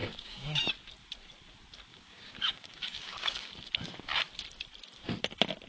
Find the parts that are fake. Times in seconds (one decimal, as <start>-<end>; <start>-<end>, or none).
0.0-0.6; 1.9-3.7